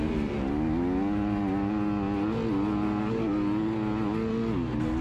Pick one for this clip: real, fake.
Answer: real